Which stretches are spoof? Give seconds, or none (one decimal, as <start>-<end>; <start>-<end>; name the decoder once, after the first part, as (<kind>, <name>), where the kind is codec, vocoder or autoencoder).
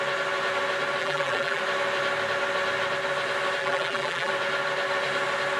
1.0-1.6 (vocoder, BigVGAN v2); 3.6-4.3